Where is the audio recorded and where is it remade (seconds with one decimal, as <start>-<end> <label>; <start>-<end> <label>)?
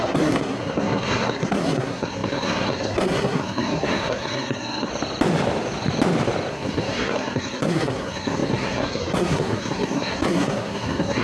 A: 0.0-4.9 remade; 4.9-6.5 recorded; 6.5-11.2 remade